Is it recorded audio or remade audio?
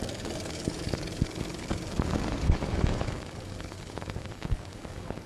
remade